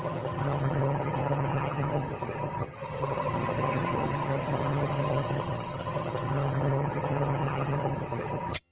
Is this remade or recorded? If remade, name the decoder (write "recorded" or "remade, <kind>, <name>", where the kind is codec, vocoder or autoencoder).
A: remade, vocoder, HiFi-GAN